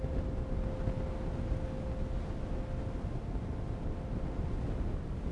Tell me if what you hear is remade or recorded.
recorded